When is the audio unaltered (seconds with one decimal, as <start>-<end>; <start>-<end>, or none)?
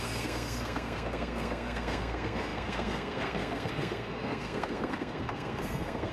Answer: none